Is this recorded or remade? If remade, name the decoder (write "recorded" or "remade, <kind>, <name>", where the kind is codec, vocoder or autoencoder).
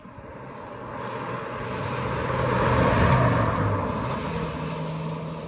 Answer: recorded